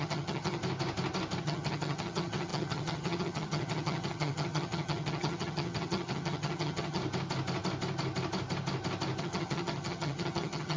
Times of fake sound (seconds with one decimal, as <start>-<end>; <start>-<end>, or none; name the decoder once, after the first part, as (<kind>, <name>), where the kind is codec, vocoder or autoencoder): 0.0-0.6 (vocoder, HiFi-GAN); 1.4-7.0; 9.2-10.8